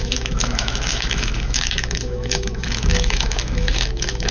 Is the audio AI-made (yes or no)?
yes